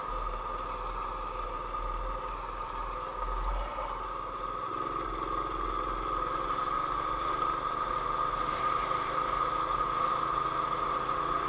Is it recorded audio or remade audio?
recorded